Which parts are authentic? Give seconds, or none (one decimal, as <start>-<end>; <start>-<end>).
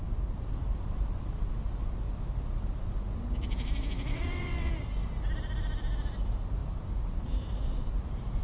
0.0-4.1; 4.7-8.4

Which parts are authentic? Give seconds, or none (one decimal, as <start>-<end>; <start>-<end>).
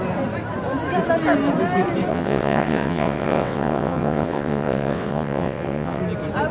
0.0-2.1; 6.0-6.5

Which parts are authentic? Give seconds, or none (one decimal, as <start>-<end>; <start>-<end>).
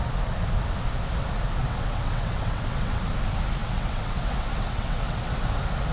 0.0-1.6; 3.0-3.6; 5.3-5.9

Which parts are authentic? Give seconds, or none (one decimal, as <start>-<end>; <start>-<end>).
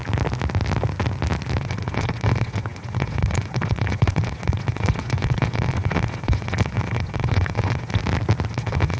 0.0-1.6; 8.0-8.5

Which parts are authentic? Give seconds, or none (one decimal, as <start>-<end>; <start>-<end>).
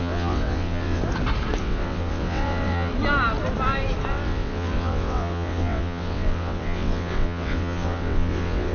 1.0-1.6; 2.9-4.1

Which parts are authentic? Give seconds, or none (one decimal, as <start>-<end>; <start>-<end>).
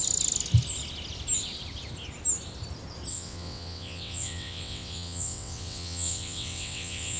0.0-3.1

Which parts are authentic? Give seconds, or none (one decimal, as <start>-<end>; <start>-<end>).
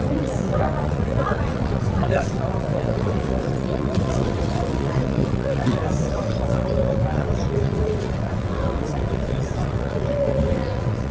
none